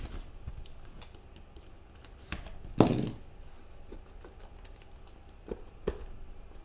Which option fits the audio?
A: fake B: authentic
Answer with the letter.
B